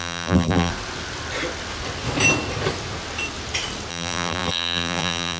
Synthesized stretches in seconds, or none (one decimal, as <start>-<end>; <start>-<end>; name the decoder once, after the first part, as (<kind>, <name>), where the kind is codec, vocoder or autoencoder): 0.0-0.7 (vocoder, BigVGAN v2); 3.9-5.4